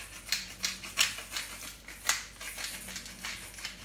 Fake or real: real